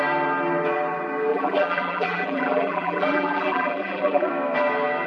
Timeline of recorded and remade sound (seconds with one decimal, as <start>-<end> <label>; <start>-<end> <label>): 0.0-1.3 recorded; 1.3-4.3 remade; 4.3-5.1 recorded